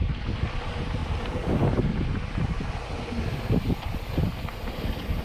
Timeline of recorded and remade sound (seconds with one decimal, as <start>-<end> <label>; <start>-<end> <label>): 0.0-5.2 recorded